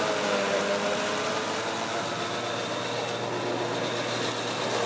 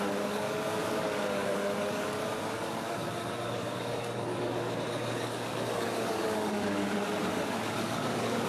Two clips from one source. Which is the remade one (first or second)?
second